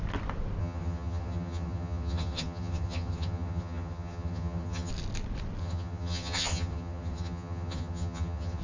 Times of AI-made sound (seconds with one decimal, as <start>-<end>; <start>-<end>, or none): 0.6-4.9; 5.6-8.6